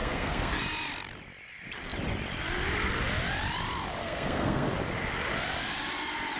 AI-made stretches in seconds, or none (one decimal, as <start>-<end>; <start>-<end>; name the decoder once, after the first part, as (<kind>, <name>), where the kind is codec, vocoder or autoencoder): 0.0-0.6 (codec, SNAC); 4.0-4.7